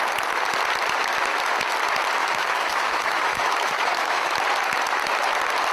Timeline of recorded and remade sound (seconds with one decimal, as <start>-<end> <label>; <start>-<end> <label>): 0.0-2.2 recorded; 2.2-4.3 remade; 4.3-5.7 recorded